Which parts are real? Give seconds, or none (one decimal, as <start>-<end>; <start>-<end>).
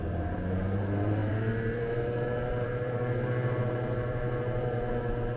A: none